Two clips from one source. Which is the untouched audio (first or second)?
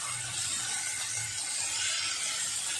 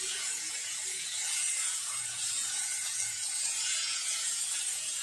first